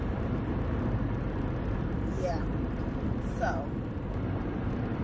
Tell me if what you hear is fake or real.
fake